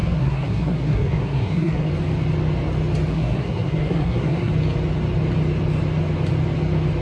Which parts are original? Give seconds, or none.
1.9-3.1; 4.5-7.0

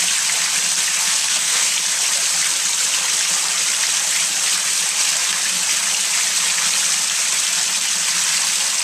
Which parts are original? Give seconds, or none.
0.0-1.0; 1.7-8.8

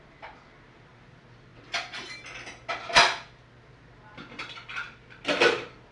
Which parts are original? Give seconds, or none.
0.0-5.9

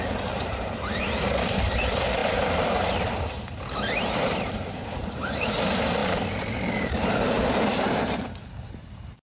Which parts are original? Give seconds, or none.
1.0-1.7

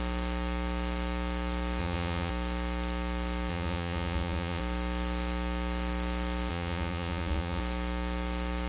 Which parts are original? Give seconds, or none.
0.0-1.8; 2.3-3.5; 4.6-6.5; 7.6-8.7

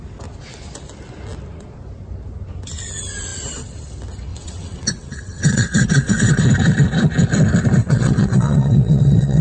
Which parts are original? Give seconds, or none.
0.0-4.3; 6.4-7.8